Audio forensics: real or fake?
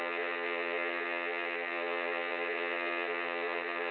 fake